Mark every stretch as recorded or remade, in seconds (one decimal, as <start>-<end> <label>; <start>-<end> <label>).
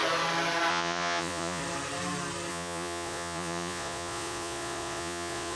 0.0-0.7 recorded; 0.7-1.6 remade; 1.6-2.5 recorded; 2.5-5.6 remade